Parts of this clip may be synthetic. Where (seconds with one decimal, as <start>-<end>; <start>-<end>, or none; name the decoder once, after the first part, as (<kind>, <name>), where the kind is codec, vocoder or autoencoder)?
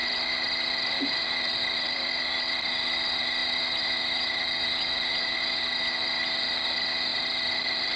0.0-2.2 (vocoder, BigVGAN v2); 7.1-8.0